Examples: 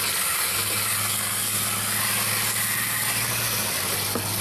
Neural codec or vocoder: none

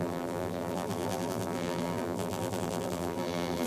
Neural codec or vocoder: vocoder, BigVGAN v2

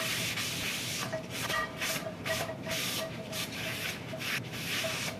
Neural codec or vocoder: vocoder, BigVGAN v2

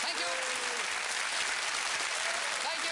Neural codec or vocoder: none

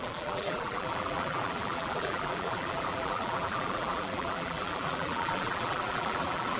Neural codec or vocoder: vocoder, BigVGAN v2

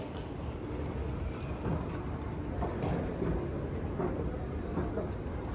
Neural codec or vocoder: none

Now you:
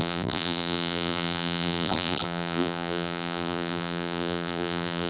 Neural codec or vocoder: vocoder, BigVGAN v2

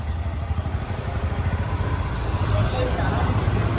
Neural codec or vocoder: vocoder, BigVGAN v2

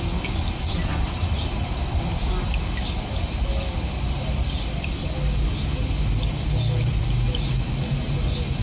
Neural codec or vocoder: none